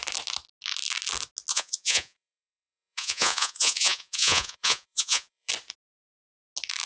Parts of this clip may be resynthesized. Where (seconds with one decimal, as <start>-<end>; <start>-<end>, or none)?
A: 1.5-5.5

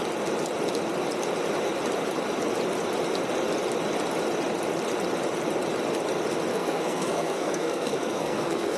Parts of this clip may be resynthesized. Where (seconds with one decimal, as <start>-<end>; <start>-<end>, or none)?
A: 6.5-8.8

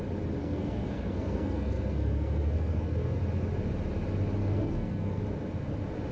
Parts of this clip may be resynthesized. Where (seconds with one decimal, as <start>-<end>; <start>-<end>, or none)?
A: 0.4-3.2; 4.4-5.2

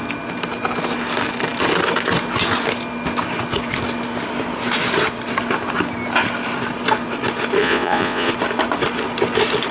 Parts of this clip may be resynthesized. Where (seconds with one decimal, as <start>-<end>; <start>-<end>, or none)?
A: 7.6-8.3

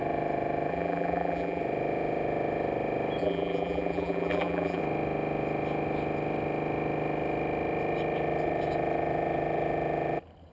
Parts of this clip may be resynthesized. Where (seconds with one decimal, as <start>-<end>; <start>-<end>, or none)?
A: 0.7-1.6; 3.2-4.8

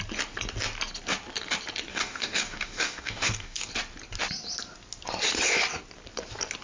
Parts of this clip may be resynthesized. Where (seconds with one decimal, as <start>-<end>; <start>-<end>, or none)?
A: 1.9-3.7